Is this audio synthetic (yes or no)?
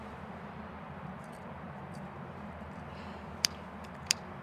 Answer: yes